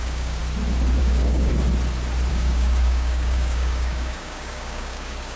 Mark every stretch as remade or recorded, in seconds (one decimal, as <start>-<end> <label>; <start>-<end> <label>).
0.0-0.4 remade; 0.4-1.0 recorded; 1.0-1.5 remade; 1.5-2.3 recorded; 2.3-5.4 remade